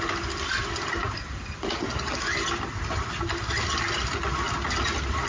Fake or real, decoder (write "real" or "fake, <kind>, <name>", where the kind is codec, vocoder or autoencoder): real